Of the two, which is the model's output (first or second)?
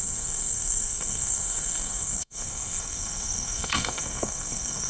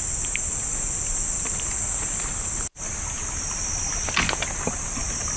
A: first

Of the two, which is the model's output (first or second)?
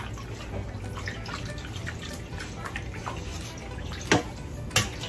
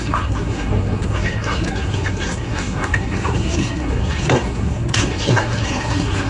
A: second